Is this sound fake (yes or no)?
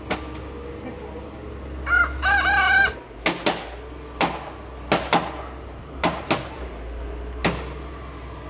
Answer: no